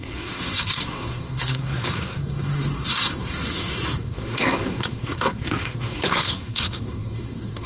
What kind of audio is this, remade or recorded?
remade